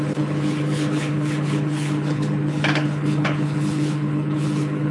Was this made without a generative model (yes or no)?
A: no